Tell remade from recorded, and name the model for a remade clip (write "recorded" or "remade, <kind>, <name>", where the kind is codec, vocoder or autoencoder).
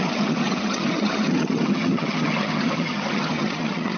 remade, vocoder, HiFi-GAN